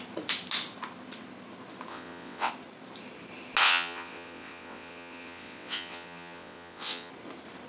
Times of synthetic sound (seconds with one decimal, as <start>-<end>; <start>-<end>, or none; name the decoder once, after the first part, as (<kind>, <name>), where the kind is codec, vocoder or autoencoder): 1.9-2.5 (vocoder, WaveNeXt); 3.6-7.1